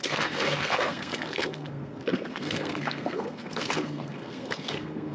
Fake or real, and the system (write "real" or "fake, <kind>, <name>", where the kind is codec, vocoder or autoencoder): fake, codec, SNAC